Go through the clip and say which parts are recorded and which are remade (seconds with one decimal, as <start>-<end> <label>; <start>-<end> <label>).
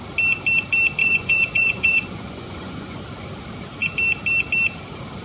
0.0-1.0 recorded; 1.0-3.0 remade; 3.0-5.2 recorded